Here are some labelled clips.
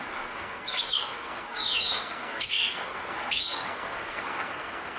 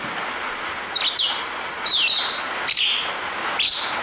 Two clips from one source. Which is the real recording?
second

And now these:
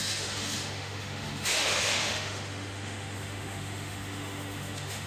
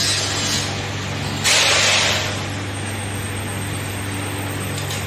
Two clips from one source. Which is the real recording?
second